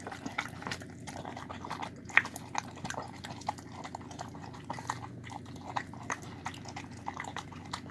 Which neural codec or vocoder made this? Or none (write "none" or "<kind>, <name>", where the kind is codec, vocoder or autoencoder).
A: none